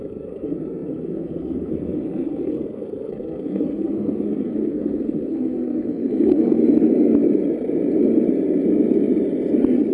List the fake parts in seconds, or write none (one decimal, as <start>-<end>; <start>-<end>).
0.0-6.6